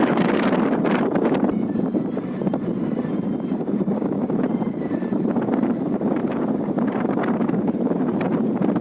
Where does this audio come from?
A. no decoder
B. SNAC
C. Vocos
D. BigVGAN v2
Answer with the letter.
D